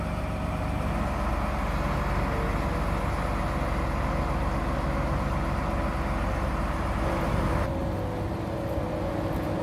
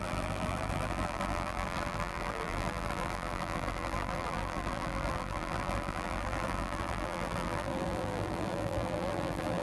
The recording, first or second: first